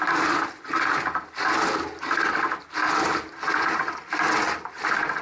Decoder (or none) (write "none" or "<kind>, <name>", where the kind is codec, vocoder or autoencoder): none